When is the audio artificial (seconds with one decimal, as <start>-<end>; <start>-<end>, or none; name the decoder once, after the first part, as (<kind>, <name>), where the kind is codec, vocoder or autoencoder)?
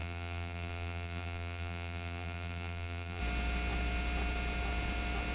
0.0-3.2 (vocoder, BigVGAN v2)